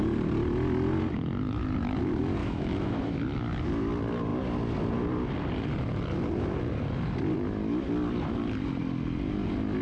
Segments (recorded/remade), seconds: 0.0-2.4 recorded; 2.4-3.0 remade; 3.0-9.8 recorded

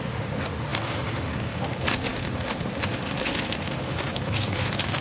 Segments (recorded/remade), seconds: 0.0-5.0 remade

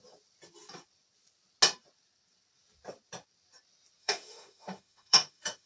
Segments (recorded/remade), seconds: 0.0-4.0 recorded; 4.0-5.7 remade